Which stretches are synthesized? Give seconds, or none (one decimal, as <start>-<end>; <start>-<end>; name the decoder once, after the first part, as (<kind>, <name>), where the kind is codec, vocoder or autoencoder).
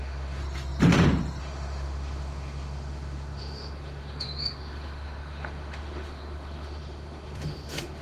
0.0-0.4 (autoencoder, DAC-VAE); 1.4-8.0